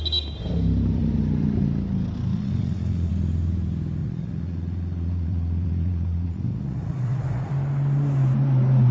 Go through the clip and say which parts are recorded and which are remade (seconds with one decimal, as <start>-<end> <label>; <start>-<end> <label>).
0.0-2.3 recorded; 2.3-3.1 remade; 3.1-4.0 recorded; 4.0-7.5 remade; 7.5-8.9 recorded